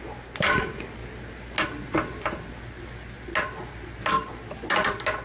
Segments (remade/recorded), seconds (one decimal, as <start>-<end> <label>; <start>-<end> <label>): 0.0-5.2 recorded